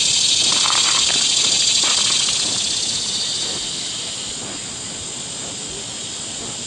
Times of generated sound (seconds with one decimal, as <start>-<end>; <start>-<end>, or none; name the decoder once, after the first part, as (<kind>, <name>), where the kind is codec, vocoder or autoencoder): none